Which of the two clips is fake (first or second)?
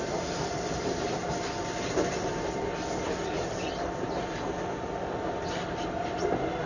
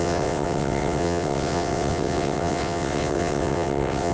second